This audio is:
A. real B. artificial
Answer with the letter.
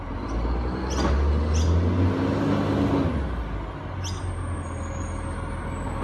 A